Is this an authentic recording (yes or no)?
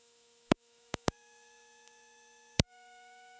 no